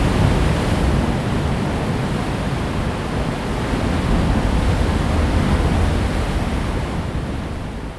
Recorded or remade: recorded